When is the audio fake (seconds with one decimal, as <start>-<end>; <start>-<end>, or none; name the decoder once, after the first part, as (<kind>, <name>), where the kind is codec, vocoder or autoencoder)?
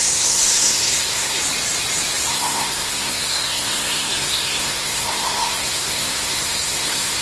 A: 0.0-1.4 (codec, SNAC); 2.3-7.2